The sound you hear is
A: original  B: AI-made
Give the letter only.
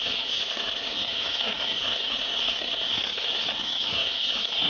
B